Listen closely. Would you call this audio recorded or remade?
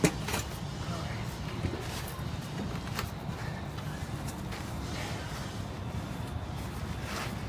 recorded